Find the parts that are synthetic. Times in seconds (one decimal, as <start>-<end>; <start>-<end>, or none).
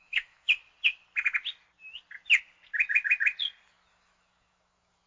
0.0-0.6; 3.7-5.1